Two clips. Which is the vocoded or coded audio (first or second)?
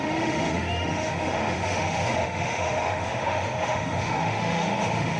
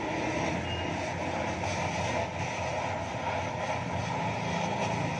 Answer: first